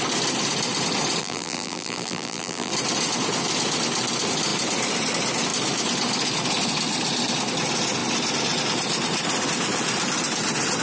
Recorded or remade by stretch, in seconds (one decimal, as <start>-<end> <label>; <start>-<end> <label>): 0.0-1.2 recorded; 1.2-2.7 remade; 2.7-10.8 recorded

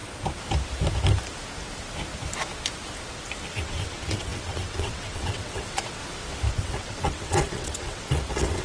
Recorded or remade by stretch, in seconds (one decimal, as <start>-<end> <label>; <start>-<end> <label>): 0.0-3.5 recorded; 3.5-6.0 remade; 6.0-6.5 recorded; 6.5-8.6 remade

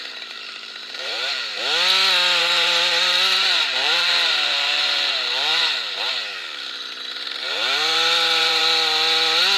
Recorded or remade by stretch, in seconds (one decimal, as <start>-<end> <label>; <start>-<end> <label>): 0.0-1.5 remade; 1.5-2.4 recorded; 2.4-5.5 remade; 5.5-7.4 recorded; 7.4-8.6 remade; 8.6-9.6 recorded

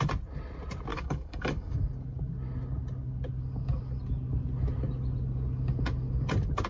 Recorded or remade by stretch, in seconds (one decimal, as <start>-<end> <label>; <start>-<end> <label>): 0.0-0.9 recorded; 0.9-1.8 remade; 1.8-6.7 recorded

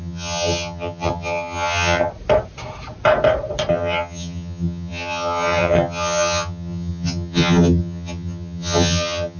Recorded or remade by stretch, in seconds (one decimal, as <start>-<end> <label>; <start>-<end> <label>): 0.0-2.1 remade; 2.1-3.7 recorded; 3.7-9.4 remade

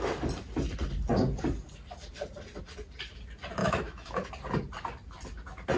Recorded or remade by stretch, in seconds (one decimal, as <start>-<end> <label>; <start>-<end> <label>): 0.0-3.6 recorded; 3.6-4.3 remade; 4.3-5.8 recorded

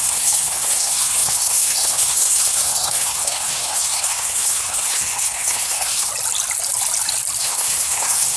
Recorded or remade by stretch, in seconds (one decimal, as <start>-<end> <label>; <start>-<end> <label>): 0.0-6.1 remade; 6.1-7.4 recorded; 7.4-8.4 remade